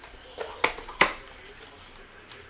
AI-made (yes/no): no